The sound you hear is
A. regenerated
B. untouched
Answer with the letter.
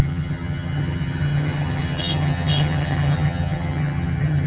A